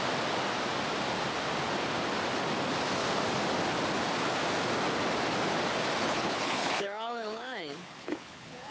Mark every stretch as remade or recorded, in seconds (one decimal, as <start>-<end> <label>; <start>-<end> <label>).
0.0-6.0 recorded; 6.0-8.7 remade